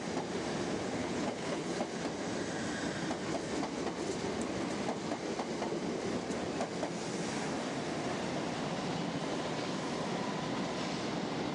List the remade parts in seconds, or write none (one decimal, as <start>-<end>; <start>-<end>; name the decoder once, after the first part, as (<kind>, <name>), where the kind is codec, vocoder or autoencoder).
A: 1.0-1.7 (codec, HILCodec)